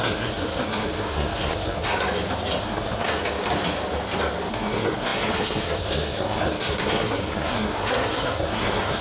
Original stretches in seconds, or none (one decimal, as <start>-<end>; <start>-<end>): 1.9-2.6; 3.2-4.5

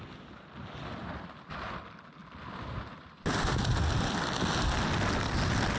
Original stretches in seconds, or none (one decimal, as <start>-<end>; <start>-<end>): 0.0-5.8

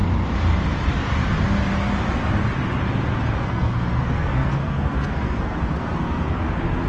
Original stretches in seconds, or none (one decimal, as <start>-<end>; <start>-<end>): 0.0-3.4; 6.4-6.9

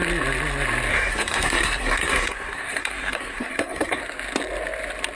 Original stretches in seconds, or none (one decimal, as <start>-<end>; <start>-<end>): 0.0-0.9; 4.0-5.1

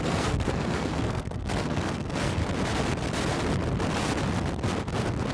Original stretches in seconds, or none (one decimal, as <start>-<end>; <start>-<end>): 2.4-5.3